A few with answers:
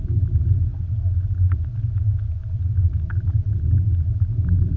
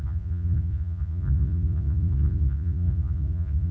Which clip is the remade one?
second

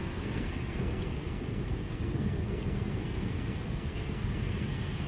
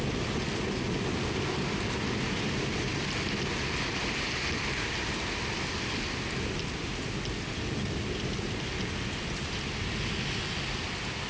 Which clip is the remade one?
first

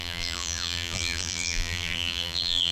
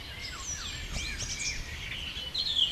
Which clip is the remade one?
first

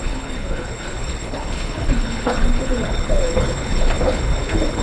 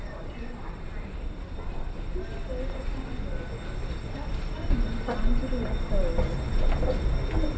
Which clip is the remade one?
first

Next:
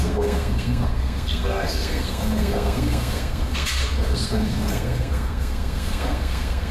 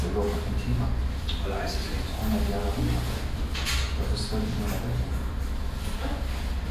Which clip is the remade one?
first